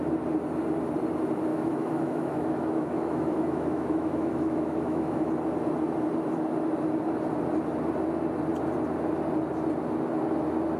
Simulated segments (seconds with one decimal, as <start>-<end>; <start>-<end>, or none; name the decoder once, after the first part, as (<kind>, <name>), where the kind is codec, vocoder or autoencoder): 1.5-5.3 (autoencoder, DAC-VAE)